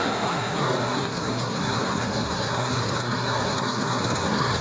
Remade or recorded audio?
remade